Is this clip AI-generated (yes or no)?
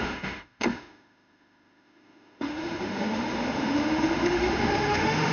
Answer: yes